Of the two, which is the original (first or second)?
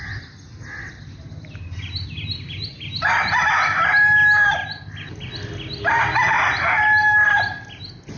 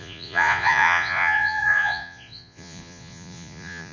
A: first